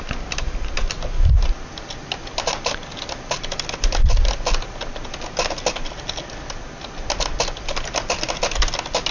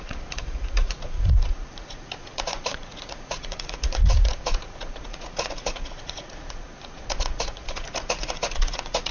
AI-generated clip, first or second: second